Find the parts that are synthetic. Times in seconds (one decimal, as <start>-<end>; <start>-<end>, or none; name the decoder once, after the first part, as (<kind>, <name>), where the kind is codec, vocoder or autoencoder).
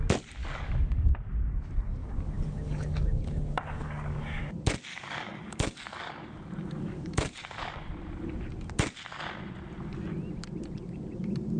0.4-1.1 (codec, DAC); 2.0-4.4; 4.9-7.9